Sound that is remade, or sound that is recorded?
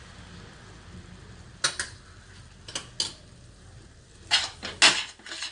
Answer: recorded